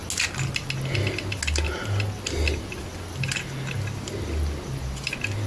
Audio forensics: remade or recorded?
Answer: recorded